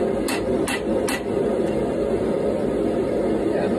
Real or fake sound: real